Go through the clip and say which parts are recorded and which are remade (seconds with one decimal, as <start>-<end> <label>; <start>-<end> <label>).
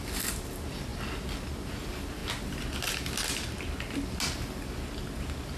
0.0-0.9 remade; 0.9-1.7 recorded; 1.7-2.2 remade; 2.2-5.6 recorded